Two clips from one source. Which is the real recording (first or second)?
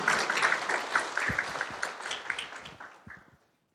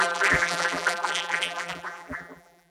first